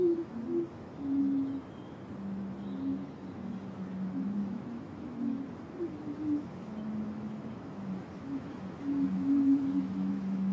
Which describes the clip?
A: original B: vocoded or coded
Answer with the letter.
B